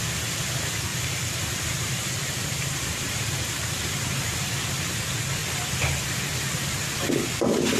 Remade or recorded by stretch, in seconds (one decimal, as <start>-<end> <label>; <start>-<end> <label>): 0.0-0.9 recorded; 0.9-4.8 remade; 4.8-7.8 recorded